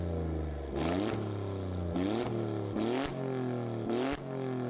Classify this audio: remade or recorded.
recorded